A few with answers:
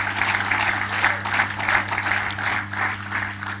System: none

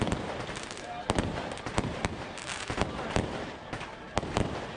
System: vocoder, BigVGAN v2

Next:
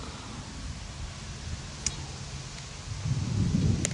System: none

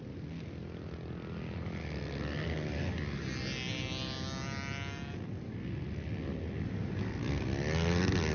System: none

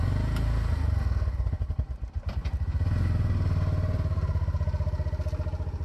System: none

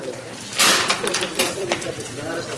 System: none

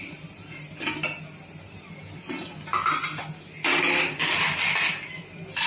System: none